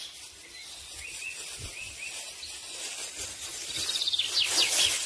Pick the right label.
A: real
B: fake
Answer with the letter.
A